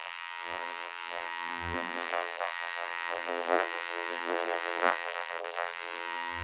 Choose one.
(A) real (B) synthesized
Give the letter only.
B